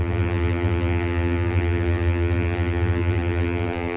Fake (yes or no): yes